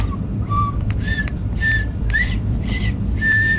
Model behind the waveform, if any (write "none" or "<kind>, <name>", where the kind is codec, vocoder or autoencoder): vocoder, BigVGAN v2